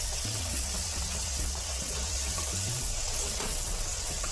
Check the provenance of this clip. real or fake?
fake